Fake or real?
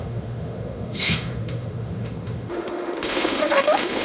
fake